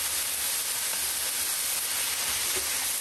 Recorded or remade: recorded